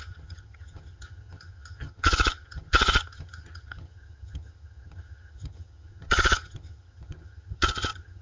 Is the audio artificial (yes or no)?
yes